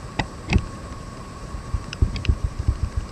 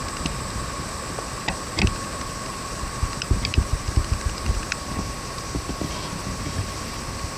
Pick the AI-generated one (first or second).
first